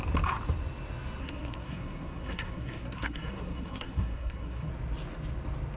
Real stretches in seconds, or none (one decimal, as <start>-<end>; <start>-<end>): 0.0-1.2; 4.7-5.8